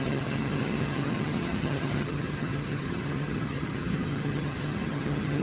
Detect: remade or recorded remade